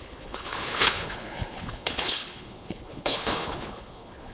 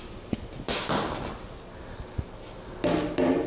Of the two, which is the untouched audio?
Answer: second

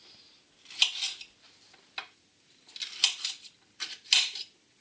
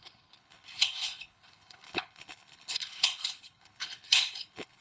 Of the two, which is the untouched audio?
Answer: first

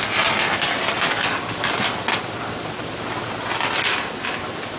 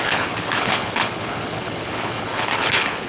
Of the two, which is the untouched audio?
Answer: first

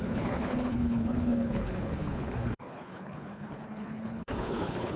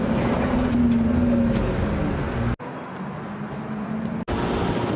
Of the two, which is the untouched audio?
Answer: second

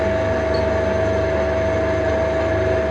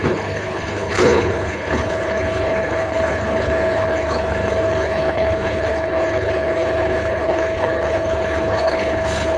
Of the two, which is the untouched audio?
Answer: first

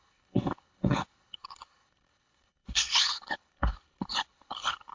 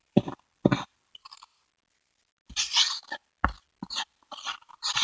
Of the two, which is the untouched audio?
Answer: second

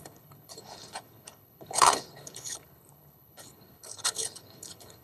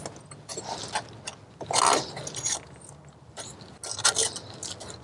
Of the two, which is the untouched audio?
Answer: second